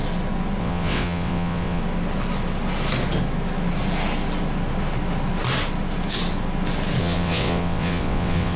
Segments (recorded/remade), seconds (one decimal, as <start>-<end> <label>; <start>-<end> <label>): 0.0-0.6 recorded; 0.6-1.8 remade; 1.8-7.0 recorded; 7.0-8.6 remade